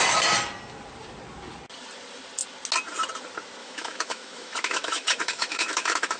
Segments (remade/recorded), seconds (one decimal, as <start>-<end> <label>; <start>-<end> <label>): 0.0-3.6 recorded; 3.6-6.2 remade

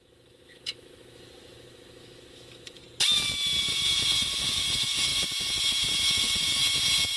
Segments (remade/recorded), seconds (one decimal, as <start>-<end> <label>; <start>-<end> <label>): 0.0-2.8 remade; 2.8-3.6 recorded; 3.6-7.2 remade

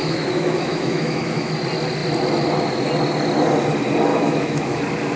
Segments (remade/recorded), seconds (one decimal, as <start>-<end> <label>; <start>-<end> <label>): 0.0-1.5 remade; 1.5-4.1 recorded; 4.1-4.8 remade; 4.8-5.2 recorded

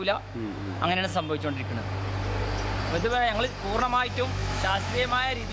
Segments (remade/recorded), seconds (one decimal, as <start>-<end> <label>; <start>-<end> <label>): 0.0-1.1 remade; 1.1-3.8 recorded; 3.8-5.5 remade

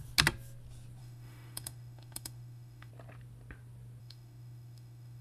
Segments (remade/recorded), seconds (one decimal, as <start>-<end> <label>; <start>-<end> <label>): 0.0-1.0 recorded; 1.0-2.9 remade; 2.9-4.0 recorded; 4.0-5.2 remade